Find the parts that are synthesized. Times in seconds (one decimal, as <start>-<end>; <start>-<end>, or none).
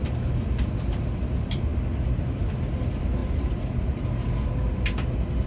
none